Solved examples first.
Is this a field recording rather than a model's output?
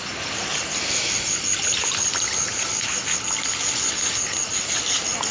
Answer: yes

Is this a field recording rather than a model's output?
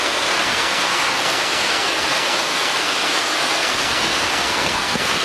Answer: no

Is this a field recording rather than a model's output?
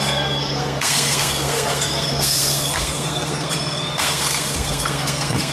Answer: no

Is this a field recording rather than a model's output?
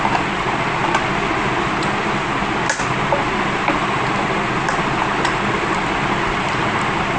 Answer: yes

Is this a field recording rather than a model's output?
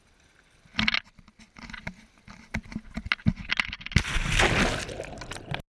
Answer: yes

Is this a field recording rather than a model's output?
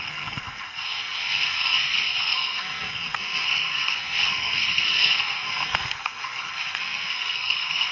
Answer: no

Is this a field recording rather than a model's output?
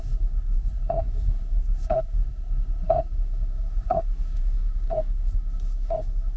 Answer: no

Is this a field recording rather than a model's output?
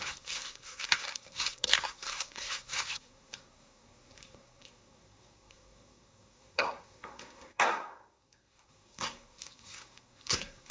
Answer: no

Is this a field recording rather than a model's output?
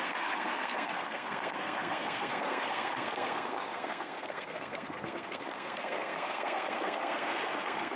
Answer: no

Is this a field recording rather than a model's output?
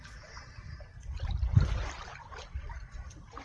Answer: yes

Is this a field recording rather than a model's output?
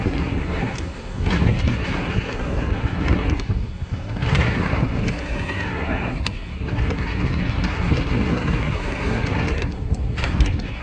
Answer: no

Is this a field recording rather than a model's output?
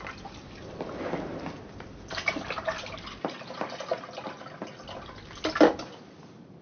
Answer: yes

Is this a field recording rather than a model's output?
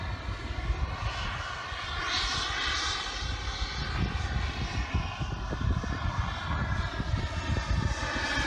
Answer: yes